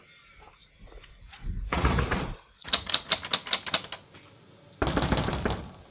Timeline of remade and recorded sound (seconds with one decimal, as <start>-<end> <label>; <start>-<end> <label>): 0.0-0.6 recorded; 0.6-3.1 remade; 3.1-5.9 recorded